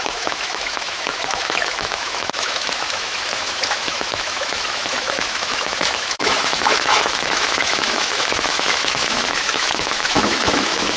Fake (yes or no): yes